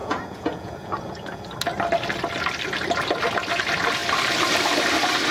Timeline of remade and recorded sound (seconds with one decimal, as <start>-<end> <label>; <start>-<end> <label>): 0.0-1.4 remade; 1.4-5.3 recorded